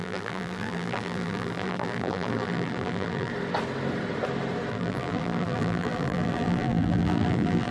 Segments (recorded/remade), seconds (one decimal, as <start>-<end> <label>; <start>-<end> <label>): 0.0-3.3 remade; 3.3-4.7 recorded; 4.7-7.7 remade